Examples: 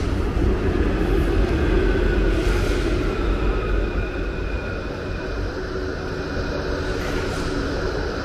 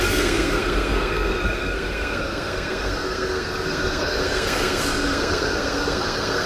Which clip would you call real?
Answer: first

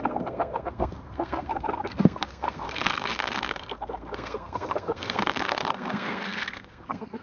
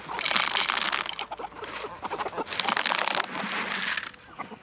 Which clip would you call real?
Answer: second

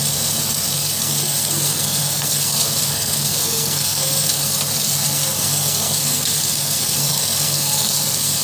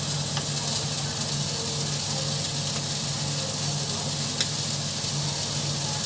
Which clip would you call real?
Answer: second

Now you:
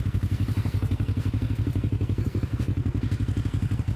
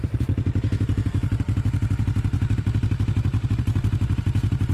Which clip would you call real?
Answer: second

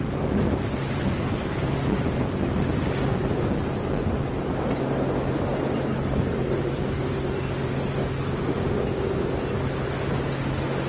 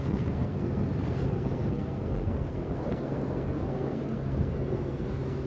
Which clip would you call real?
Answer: first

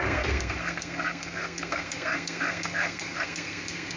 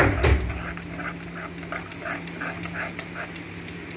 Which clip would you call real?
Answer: second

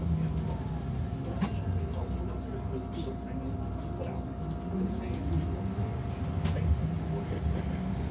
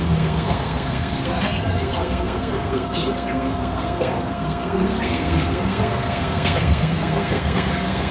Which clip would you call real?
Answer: first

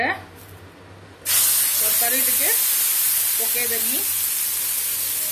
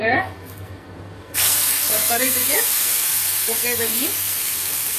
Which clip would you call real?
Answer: first